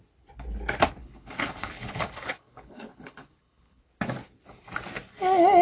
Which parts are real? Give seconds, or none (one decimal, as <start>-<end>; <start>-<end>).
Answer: 0.0-1.0; 3.8-5.6